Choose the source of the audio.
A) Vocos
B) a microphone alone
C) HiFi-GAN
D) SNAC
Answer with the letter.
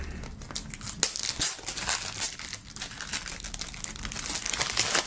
B